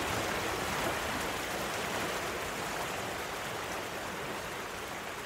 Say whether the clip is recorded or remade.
recorded